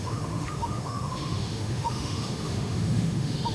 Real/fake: fake